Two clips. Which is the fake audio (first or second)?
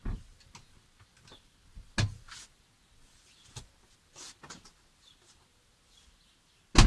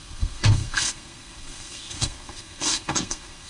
second